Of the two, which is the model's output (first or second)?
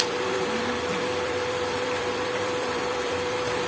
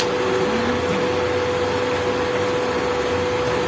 first